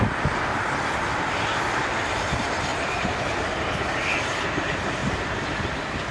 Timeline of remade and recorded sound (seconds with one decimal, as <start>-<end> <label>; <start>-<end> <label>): 0.0-2.7 recorded; 2.7-3.9 remade; 3.9-5.0 recorded; 5.0-5.6 remade; 5.6-6.1 recorded